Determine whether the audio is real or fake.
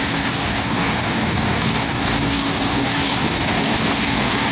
fake